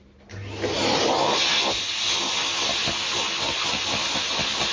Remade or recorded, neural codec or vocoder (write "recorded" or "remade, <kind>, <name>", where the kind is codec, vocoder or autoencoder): recorded